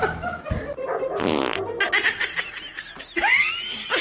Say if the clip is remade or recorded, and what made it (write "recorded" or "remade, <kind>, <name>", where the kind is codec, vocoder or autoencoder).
recorded